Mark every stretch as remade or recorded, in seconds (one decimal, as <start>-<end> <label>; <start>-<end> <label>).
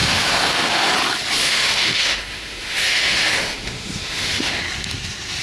0.0-0.9 remade; 0.9-1.4 recorded; 1.4-4.6 remade; 4.6-5.4 recorded